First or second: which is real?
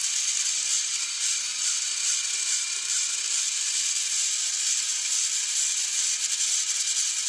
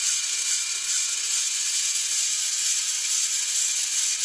first